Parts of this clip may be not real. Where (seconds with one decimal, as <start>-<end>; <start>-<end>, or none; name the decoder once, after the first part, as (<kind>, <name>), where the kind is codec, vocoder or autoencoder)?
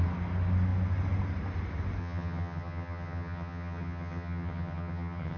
2.0-5.4 (vocoder, HiFi-GAN)